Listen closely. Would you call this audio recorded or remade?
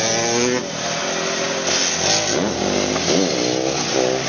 recorded